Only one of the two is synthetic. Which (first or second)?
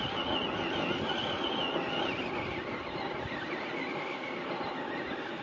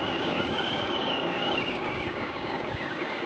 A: second